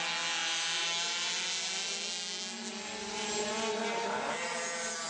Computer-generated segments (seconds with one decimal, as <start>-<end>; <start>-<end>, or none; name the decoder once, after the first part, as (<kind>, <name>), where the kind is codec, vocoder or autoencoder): none

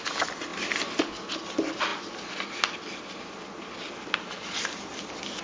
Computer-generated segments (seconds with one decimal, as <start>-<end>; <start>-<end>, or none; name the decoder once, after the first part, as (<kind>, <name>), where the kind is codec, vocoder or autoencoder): none

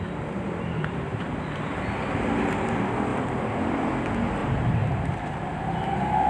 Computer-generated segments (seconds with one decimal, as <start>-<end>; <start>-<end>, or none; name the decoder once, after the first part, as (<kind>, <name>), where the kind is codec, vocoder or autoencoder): 1.1-1.9 (vocoder, BigVGAN v2); 3.1-3.9; 4.4-6.3

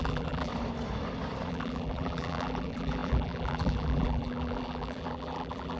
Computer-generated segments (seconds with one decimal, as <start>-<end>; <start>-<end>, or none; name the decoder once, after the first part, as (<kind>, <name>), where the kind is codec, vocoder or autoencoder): 0.0-0.5 (vocoder, BigVGAN v2); 1.5-5.8

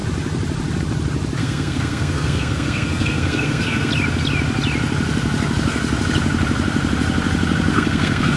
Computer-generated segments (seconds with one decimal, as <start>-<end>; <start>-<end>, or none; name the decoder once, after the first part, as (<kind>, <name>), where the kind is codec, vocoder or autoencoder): 1.4-3.9 (codec, SNAC); 7.7-8.4